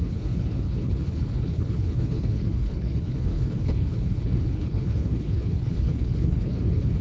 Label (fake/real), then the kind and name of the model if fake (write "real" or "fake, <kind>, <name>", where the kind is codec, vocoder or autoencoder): fake, codec, HILCodec